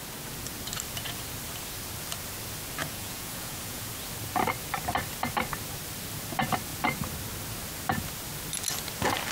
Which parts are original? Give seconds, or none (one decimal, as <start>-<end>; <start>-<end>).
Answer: 0.0-2.8; 3.9-9.3